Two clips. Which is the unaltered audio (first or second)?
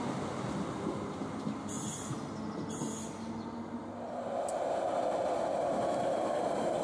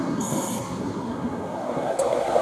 first